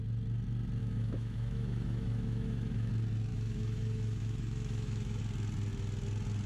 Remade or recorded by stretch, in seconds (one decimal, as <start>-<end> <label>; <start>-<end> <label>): 0.0-0.8 recorded; 0.8-2.9 remade; 2.9-3.3 recorded; 3.3-5.2 remade; 5.2-6.5 recorded